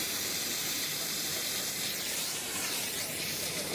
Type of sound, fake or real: fake